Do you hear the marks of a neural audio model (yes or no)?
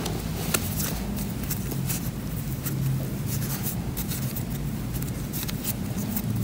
no